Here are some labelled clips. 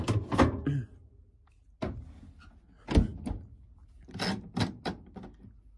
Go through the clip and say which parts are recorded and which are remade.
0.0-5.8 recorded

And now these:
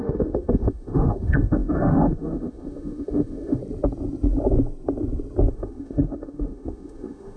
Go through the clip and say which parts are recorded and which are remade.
0.0-3.6 remade; 3.6-5.5 recorded; 5.5-7.4 remade